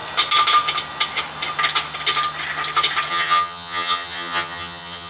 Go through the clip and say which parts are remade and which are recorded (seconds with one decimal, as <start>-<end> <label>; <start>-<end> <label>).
0.0-3.1 recorded; 3.1-5.1 remade